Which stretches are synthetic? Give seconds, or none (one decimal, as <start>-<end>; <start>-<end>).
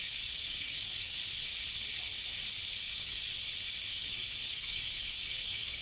0.0-1.2; 2.8-3.3; 3.9-5.8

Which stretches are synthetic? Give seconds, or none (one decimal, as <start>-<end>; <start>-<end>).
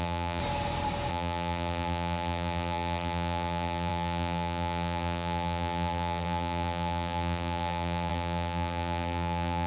0.0-0.4; 1.1-9.7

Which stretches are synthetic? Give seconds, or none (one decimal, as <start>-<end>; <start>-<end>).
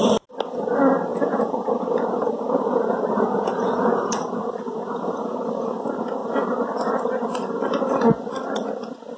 1.1-5.4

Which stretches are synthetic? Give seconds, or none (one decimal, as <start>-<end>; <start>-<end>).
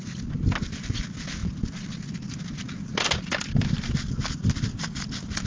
none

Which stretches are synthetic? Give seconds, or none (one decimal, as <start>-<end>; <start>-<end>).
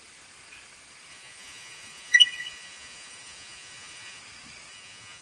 1.1-4.2; 4.7-5.2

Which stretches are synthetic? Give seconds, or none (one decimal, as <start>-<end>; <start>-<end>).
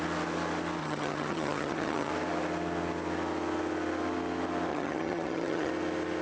0.8-2.1; 4.7-5.7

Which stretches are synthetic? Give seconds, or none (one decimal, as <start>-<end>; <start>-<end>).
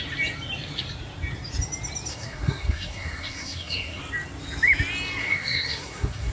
2.1-4.0; 5.2-6.3